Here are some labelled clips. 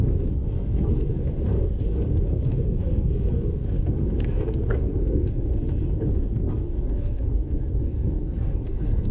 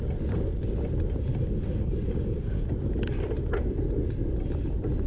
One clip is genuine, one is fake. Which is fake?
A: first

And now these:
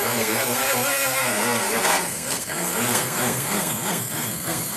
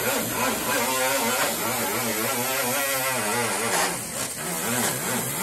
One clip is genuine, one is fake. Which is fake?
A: first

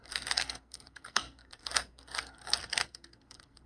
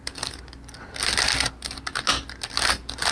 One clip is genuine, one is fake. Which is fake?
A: first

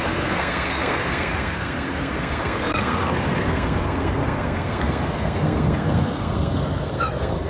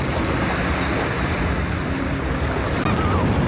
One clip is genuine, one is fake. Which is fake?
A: first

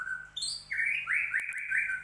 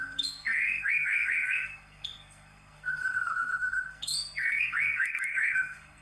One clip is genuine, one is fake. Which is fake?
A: second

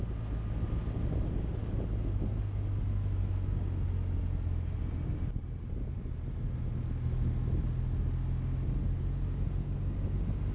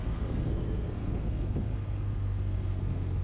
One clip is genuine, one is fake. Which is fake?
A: second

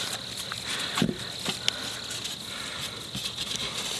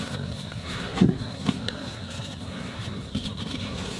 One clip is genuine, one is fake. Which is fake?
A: second